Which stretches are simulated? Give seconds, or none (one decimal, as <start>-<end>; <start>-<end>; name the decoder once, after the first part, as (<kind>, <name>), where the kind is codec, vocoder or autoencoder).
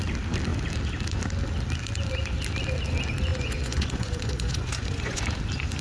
3.3-5.2 (vocoder, Vocos)